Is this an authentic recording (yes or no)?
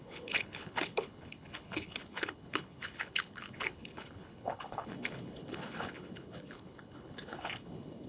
no